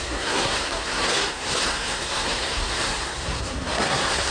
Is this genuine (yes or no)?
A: no